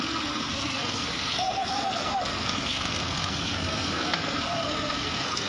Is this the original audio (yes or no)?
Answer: no